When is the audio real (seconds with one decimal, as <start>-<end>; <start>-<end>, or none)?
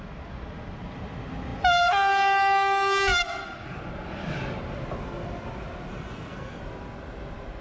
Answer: 0.0-5.9; 6.6-7.6